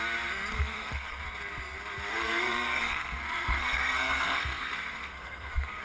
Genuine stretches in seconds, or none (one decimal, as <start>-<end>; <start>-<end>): 0.0-0.5; 1.2-2.1